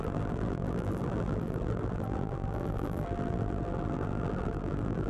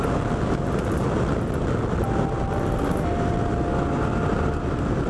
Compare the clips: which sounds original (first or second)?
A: second